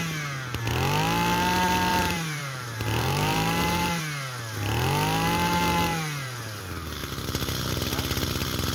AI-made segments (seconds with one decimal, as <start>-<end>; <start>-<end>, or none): 1.9-4.0; 5.9-6.6; 7.0-7.5